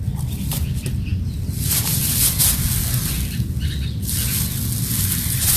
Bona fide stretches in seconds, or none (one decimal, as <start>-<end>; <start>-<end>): 0.0-5.6